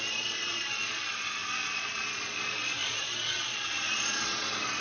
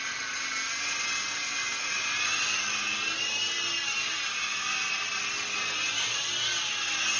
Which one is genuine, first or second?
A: second